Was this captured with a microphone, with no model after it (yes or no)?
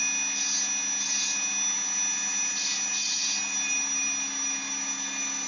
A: yes